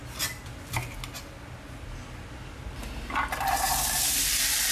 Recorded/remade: recorded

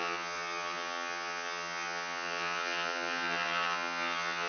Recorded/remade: remade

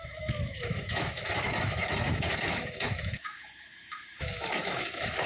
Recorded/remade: remade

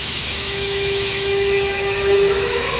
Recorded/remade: remade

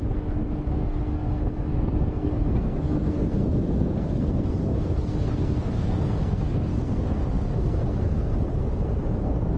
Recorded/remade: remade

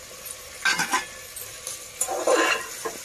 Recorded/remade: recorded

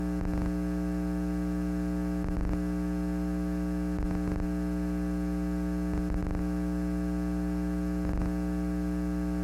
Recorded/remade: recorded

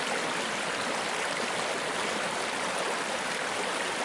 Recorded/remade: recorded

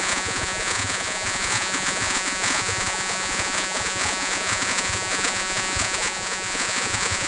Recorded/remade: remade